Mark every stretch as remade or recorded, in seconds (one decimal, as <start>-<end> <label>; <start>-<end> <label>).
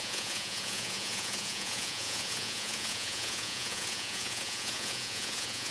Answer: 0.0-5.7 remade